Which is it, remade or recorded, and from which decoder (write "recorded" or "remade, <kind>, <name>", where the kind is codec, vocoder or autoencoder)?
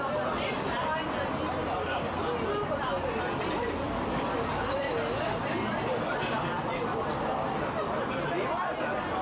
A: recorded